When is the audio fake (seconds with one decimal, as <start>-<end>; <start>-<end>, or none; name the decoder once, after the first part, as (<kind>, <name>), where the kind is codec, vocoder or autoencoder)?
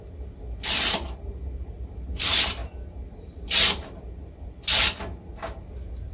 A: none